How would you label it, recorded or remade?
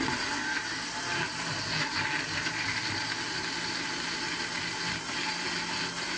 recorded